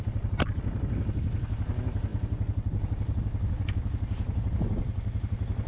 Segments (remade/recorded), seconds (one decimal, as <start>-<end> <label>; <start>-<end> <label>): 0.0-5.7 recorded